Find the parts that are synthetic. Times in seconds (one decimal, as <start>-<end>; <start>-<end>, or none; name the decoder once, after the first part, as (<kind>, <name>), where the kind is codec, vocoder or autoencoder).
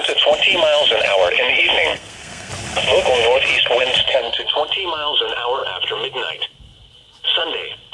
1.9-2.5 (codec, SNAC)